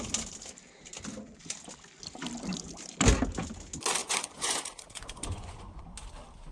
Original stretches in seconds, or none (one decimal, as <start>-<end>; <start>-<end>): 0.0-4.0; 5.8-6.5